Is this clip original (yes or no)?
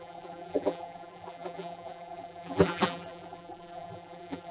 no